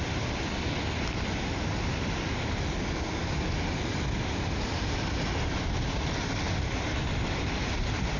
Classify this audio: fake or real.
real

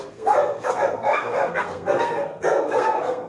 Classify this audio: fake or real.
fake